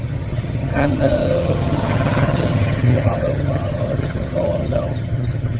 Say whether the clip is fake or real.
fake